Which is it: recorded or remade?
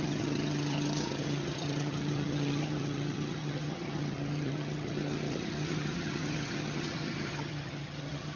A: remade